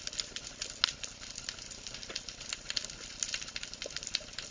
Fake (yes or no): no